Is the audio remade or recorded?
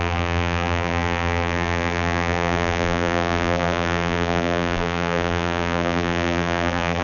remade